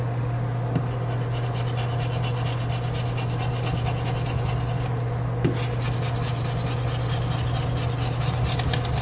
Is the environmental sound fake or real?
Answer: real